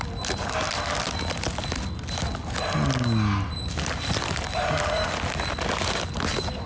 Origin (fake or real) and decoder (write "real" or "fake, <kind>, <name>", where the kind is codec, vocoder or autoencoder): real